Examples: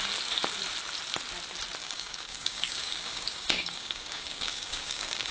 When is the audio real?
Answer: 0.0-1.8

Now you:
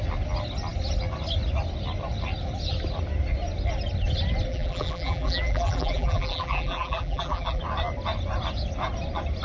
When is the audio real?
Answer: 0.0-4.5; 7.6-9.4

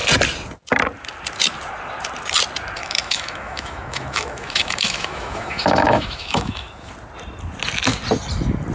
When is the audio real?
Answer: 0.0-2.8; 6.9-8.7

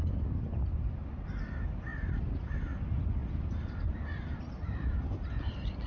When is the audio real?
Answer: 0.0-5.9

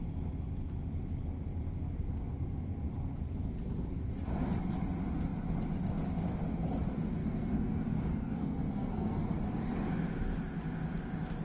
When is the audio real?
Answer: 0.0-7.2; 9.4-11.4

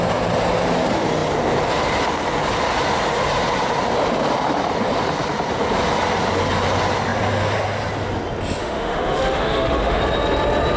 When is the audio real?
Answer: 0.0-8.6; 10.0-10.8

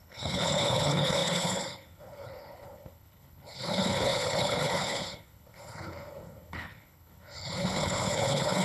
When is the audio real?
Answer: none

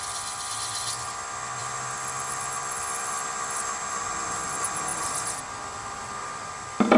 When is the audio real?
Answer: 0.0-7.0